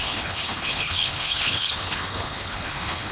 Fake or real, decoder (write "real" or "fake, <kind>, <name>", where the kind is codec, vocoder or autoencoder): fake, codec, HILCodec